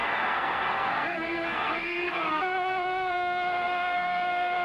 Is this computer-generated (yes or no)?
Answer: yes